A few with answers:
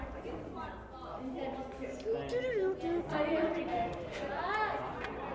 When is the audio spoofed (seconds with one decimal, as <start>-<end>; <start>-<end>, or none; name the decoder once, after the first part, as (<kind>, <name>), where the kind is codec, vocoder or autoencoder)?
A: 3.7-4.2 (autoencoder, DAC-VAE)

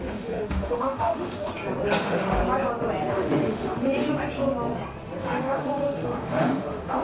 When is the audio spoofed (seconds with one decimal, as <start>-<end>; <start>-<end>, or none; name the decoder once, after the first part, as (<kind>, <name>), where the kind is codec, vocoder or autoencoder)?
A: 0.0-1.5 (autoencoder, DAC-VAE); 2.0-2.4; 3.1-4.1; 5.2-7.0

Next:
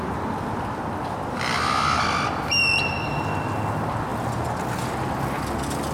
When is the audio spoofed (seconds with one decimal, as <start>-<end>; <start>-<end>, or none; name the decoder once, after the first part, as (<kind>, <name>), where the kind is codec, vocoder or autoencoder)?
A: none

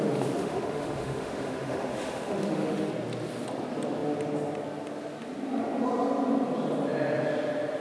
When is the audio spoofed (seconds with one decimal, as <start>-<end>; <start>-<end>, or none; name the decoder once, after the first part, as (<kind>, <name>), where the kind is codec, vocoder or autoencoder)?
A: 0.4-2.9 (autoencoder, DAC-VAE)

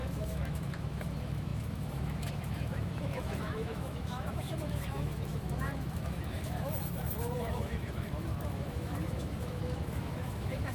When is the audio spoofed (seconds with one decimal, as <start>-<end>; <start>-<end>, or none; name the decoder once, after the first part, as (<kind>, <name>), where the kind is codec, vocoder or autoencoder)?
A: 0.0-10.7 (autoencoder, DAC-VAE)

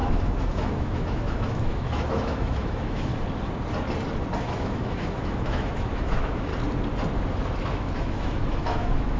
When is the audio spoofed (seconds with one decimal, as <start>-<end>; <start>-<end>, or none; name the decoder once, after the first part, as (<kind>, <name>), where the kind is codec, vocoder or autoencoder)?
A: 0.0-3.1 (autoencoder, DAC-VAE); 4.4-6.5; 7.6-9.2

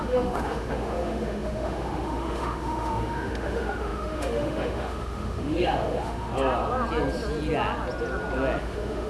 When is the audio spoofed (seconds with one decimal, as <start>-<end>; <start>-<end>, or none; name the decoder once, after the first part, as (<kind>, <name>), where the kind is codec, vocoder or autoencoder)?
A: 0.0-6.3 (autoencoder, DAC-VAE); 8.6-9.1

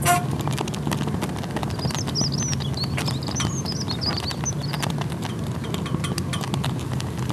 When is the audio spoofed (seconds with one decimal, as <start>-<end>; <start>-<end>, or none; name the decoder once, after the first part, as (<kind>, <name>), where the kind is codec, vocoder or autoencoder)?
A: none